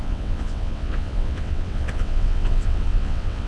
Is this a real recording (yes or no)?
no